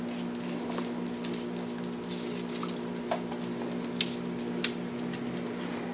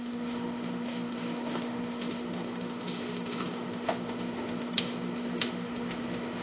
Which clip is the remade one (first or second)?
second